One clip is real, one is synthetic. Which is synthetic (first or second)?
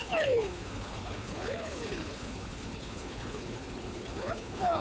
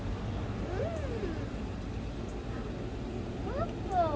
first